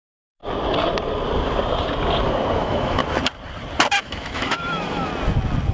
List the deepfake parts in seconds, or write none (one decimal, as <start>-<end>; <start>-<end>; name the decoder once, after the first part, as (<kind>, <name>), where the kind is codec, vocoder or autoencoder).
0.0-0.4 (autoencoder, DAC-VAE); 2.6-3.0; 4.0-5.1